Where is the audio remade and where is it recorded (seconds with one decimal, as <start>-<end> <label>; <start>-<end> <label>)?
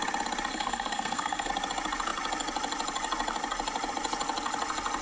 0.0-0.5 recorded; 0.5-1.5 remade; 1.5-5.0 recorded